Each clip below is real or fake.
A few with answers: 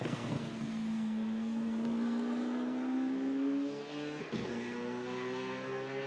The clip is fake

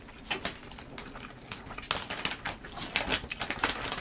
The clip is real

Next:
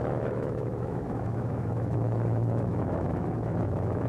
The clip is fake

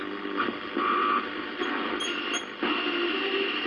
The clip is real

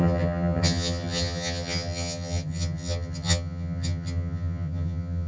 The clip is fake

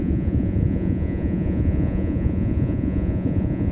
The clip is fake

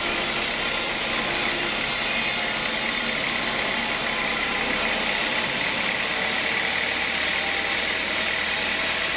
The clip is real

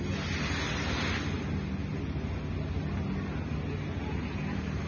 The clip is real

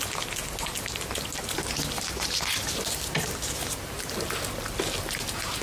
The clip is real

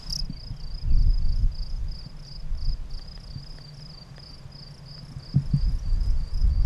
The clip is real